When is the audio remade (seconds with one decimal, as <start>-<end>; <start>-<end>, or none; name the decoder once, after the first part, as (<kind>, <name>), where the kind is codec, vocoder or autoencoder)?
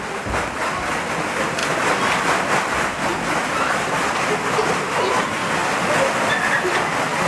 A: none